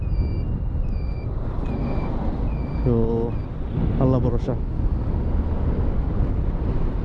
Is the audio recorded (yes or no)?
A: yes